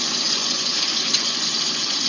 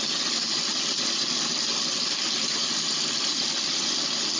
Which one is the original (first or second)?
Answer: second